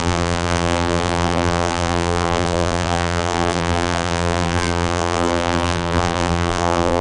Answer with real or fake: fake